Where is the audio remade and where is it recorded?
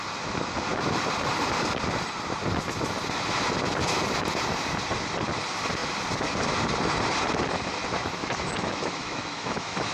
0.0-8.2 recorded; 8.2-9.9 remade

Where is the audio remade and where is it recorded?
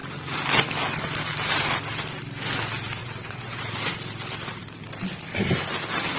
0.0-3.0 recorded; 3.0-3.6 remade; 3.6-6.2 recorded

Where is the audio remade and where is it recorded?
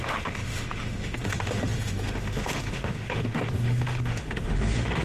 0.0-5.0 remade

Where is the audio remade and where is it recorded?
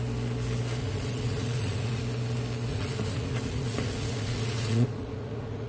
0.0-0.8 recorded; 0.8-2.0 remade; 2.0-2.7 recorded; 2.7-5.7 remade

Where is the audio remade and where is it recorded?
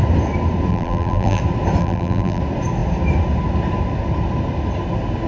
0.0-0.7 recorded; 0.7-1.4 remade; 1.4-1.8 recorded; 1.8-2.4 remade; 2.4-5.3 recorded